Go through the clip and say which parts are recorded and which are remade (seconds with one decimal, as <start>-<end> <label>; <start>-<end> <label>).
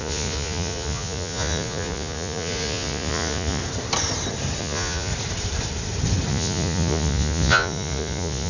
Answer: 0.0-3.6 remade; 3.6-4.6 recorded; 4.6-5.1 remade; 5.1-6.3 recorded; 6.3-8.5 remade